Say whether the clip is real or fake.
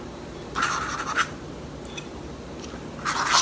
real